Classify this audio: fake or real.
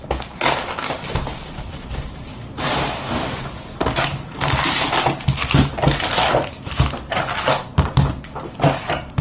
real